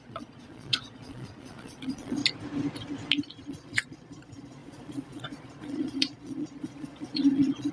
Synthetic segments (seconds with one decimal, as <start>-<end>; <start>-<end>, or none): 0.0-2.2; 3.5-7.7